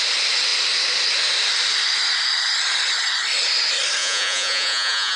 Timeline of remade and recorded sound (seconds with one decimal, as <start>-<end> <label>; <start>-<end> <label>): 0.0-4.0 recorded; 4.0-5.2 remade